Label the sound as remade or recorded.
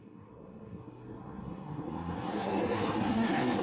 remade